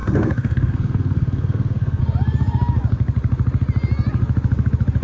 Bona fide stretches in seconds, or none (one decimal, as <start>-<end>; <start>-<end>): 2.0-5.0